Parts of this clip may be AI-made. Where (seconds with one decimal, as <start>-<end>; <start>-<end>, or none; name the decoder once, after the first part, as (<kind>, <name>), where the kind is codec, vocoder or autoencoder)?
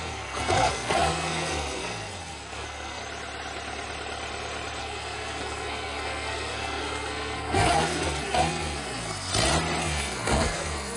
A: 0.0-3.0 (codec, SNAC); 4.8-9.3; 9.8-11.0